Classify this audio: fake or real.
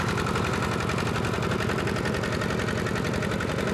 real